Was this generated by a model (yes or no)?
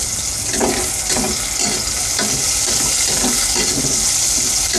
no